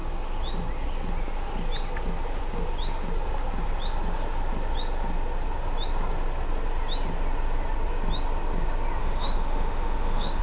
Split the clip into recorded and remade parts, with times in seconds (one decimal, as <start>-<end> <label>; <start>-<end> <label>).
0.0-9.0 recorded; 9.0-10.4 remade